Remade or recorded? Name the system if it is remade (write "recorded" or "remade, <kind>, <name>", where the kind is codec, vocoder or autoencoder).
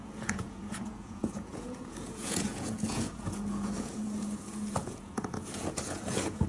remade, vocoder, Vocos